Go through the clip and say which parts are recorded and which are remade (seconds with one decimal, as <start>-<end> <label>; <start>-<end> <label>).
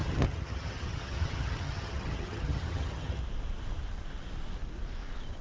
0.0-3.2 remade; 3.2-5.4 recorded